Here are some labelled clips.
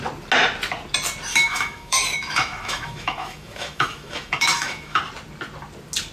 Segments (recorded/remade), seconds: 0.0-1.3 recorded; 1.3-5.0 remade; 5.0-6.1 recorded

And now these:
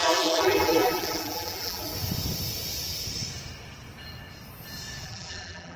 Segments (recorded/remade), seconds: 0.0-1.9 remade; 1.9-5.0 recorded; 5.0-5.8 remade